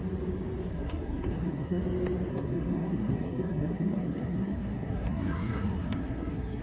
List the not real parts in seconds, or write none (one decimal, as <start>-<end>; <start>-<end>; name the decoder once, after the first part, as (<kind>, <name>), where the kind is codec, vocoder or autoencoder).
0.7-1.8 (codec, SNAC); 2.3-6.6